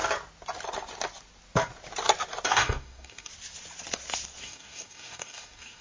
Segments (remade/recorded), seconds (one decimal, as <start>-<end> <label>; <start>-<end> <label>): 0.0-2.5 recorded; 2.5-3.3 remade; 3.3-4.4 recorded; 4.4-5.8 remade